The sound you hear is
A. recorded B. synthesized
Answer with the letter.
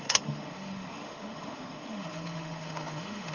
B